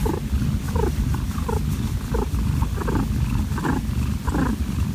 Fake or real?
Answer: real